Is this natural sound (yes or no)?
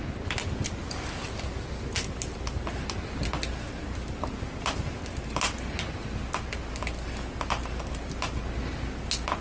yes